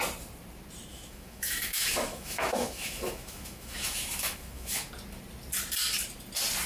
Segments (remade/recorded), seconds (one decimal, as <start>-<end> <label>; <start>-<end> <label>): 0.0-0.9 recorded; 0.9-4.9 remade; 4.9-6.7 recorded